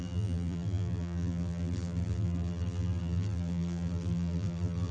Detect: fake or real fake